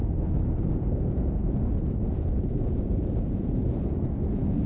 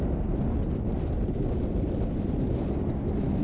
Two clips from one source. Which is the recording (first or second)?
second